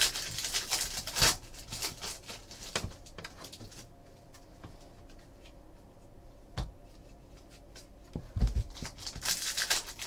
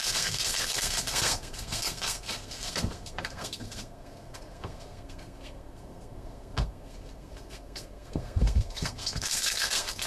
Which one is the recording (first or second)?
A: first